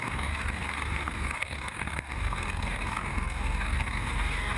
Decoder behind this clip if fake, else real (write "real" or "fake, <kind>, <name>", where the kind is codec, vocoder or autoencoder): fake, codec, DAC